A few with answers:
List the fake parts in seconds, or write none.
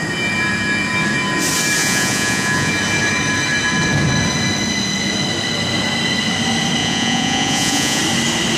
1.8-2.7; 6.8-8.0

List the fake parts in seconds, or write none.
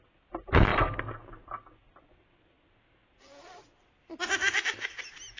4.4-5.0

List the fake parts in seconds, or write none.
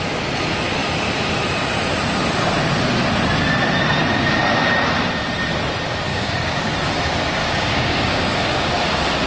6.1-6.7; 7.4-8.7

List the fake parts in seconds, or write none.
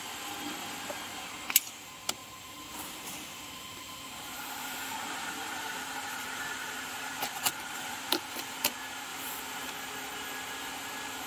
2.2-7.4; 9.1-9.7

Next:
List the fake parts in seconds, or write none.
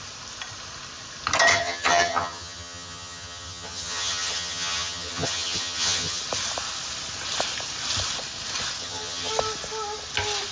1.5-6.2; 8.8-9.3